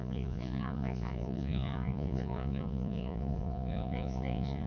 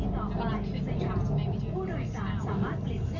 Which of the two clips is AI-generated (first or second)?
first